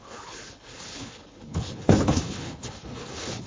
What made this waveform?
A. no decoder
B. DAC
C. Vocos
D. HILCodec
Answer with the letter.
D